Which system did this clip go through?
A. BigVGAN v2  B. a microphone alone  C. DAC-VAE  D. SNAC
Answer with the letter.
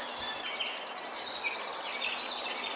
B